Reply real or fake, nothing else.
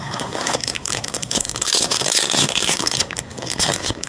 fake